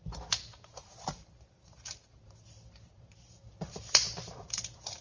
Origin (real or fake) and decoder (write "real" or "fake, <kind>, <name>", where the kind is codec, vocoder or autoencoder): fake, vocoder, BigVGAN v2